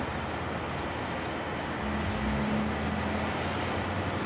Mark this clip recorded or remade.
recorded